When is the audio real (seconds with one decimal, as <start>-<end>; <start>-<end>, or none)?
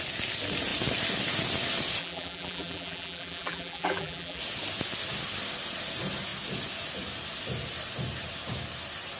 0.0-2.0; 4.4-9.2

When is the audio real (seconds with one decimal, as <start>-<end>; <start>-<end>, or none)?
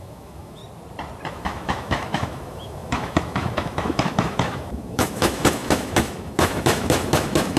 0.6-1.3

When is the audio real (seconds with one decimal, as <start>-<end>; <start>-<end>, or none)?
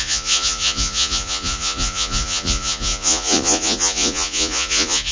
none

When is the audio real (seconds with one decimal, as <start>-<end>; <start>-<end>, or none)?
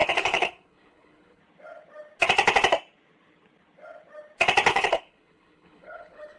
1.4-4.7